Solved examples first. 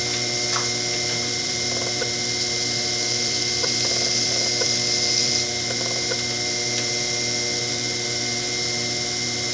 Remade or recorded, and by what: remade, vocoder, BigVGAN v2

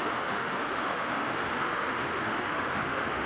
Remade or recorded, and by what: remade, autoencoder, DAC-VAE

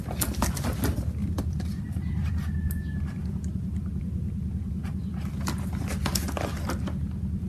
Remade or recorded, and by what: recorded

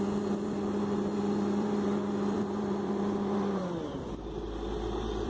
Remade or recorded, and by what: remade, vocoder, BigVGAN v2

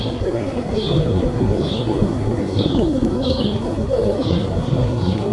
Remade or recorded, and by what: remade, codec, SNAC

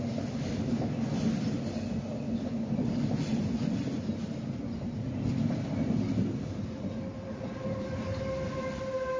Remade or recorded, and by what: recorded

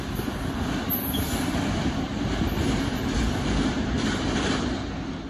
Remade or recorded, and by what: recorded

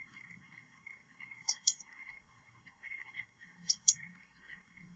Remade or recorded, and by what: remade, codec, SNAC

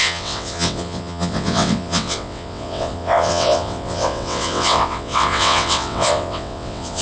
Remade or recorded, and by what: remade, vocoder, WaveNeXt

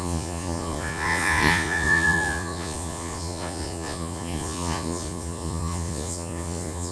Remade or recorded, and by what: remade, vocoder, Vocos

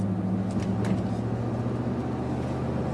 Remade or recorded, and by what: recorded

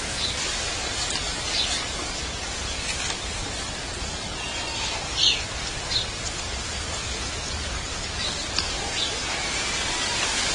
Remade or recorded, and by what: recorded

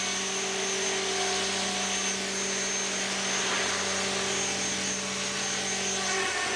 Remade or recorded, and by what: recorded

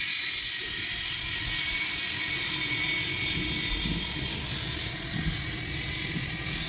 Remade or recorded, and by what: recorded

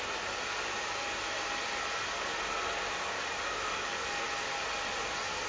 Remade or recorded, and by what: recorded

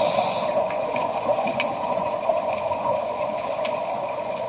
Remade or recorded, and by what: remade, vocoder, Vocos